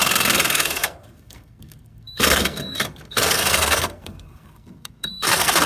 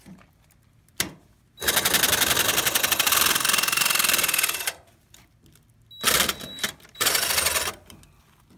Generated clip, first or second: first